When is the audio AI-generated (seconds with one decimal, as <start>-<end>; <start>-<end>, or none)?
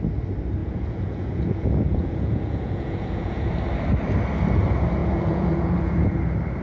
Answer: 0.6-3.5; 5.0-6.1